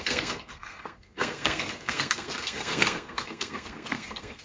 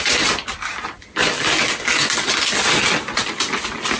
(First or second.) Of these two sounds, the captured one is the second